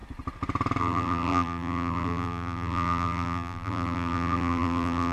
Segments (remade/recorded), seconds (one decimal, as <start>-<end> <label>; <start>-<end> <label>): 0.0-0.8 recorded; 0.8-5.1 remade